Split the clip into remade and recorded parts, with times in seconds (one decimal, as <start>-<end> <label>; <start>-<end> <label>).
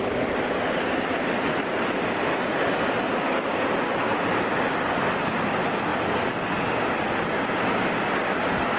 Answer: 0.0-8.8 recorded